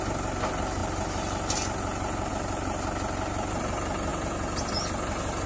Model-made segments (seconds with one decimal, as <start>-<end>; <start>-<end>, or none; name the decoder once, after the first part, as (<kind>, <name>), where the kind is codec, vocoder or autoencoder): none